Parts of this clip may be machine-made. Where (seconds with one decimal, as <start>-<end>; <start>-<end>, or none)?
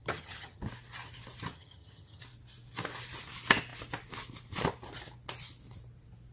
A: 0.0-0.6; 1.5-2.2